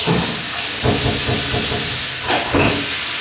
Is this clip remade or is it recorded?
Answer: recorded